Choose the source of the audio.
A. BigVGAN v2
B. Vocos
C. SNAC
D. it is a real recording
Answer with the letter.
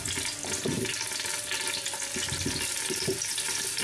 D